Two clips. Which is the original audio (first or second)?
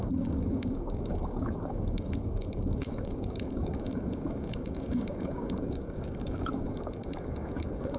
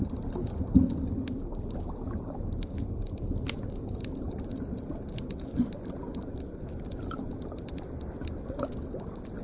second